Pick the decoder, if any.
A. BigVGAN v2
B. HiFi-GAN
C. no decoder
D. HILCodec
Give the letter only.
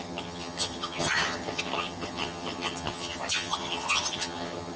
B